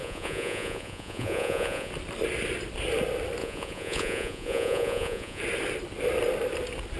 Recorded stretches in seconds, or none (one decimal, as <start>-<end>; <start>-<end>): 1.9-3.4; 5.4-7.0